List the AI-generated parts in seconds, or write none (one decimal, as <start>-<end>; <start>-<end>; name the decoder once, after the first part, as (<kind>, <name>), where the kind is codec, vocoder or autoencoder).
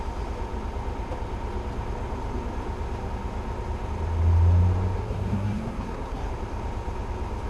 5.0-6.3 (codec, SNAC)